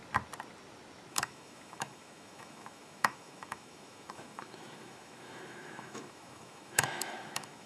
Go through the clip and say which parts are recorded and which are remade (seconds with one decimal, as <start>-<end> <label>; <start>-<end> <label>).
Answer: 0.0-1.1 recorded; 1.1-7.7 remade